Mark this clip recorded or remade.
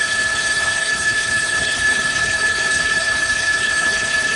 remade